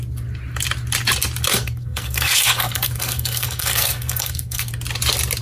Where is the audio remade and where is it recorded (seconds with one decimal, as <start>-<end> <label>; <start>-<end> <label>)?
0.0-1.5 recorded; 1.5-4.7 remade; 4.7-5.4 recorded